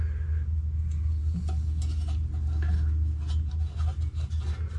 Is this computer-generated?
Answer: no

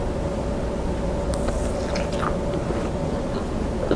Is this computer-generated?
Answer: no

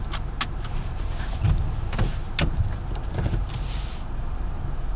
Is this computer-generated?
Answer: no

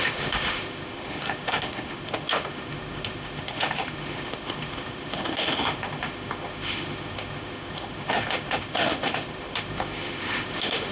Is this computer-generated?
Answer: yes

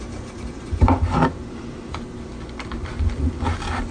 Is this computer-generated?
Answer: no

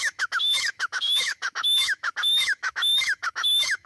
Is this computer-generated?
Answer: yes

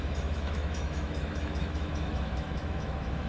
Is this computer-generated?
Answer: yes